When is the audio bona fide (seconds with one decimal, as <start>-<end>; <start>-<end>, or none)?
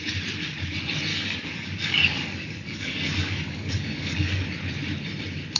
0.0-1.1; 4.5-5.6